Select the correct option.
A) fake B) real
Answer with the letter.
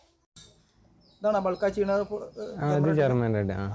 B